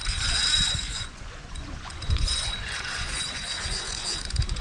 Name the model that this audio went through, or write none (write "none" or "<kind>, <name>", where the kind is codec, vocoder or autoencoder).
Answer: vocoder, Vocos